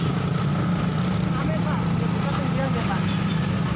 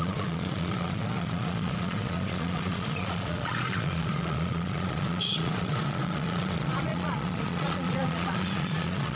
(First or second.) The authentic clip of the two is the first